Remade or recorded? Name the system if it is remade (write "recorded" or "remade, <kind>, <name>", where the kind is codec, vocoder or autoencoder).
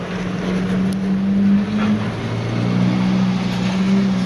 recorded